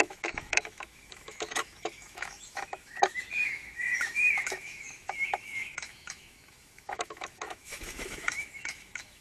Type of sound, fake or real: fake